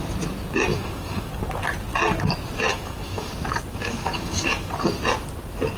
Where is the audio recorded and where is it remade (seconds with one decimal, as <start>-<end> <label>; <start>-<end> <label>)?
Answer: 0.0-0.7 recorded; 0.7-1.3 remade; 1.3-2.7 recorded; 2.7-3.3 remade; 3.3-3.7 recorded; 3.7-4.7 remade; 4.7-5.8 recorded